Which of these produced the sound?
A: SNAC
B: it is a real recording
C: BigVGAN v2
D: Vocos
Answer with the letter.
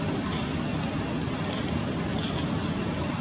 C